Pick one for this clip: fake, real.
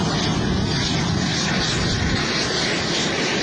real